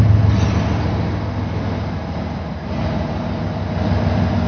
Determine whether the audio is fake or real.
real